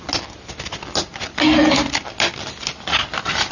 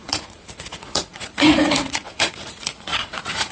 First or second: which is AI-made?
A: second